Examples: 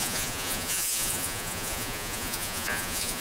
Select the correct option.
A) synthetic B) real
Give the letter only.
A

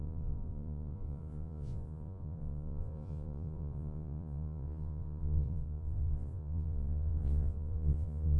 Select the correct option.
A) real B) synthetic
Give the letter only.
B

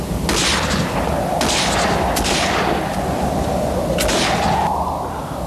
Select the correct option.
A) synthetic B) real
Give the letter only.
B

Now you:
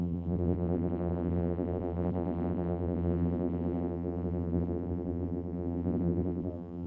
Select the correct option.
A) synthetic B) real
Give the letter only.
A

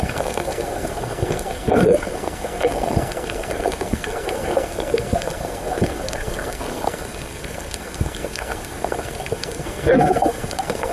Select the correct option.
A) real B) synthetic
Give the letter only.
B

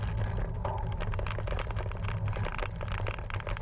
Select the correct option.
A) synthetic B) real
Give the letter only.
B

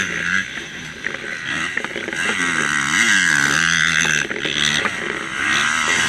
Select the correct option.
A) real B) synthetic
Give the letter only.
A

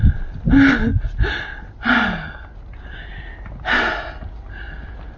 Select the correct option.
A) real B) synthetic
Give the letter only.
A